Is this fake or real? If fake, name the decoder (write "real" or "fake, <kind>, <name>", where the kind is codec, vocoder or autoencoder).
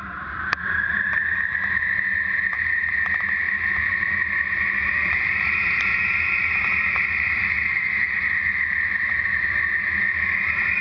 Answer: fake, vocoder, BigVGAN v2